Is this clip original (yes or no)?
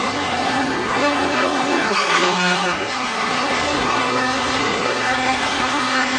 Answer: no